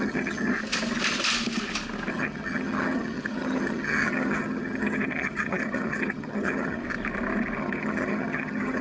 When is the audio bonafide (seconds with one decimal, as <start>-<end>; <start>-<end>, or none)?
0.5-2.1; 6.8-7.6